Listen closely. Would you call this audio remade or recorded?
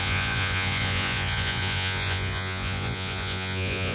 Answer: remade